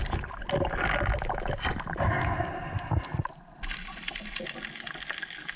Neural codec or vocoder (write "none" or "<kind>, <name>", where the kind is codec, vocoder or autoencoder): none